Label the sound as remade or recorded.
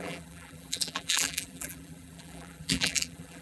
remade